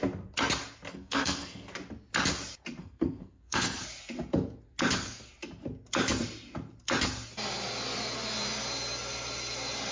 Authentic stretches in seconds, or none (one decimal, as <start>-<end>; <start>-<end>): 0.0-0.9; 1.7-2.8; 3.8-9.9